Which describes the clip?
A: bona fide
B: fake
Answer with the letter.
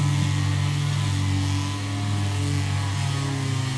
A